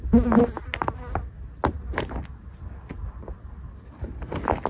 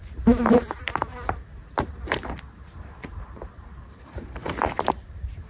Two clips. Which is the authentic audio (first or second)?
first